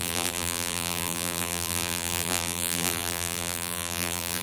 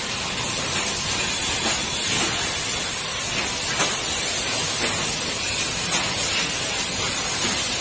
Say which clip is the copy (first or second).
first